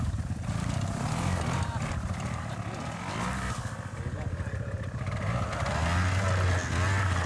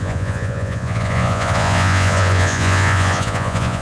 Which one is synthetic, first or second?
second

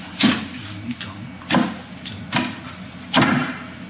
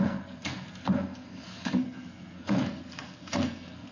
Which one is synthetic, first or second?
second